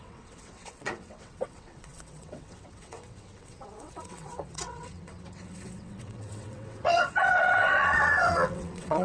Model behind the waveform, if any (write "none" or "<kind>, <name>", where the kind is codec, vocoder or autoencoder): vocoder, WaveNeXt